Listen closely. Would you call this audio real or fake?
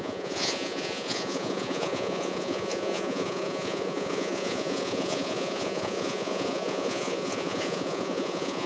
fake